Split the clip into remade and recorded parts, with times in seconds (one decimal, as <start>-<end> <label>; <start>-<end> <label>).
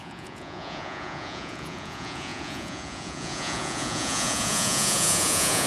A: 0.0-5.7 remade